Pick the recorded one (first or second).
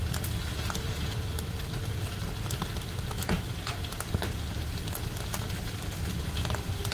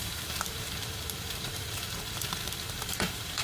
first